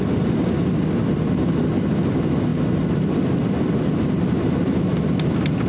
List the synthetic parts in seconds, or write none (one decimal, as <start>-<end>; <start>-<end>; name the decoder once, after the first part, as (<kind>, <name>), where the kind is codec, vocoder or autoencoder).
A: none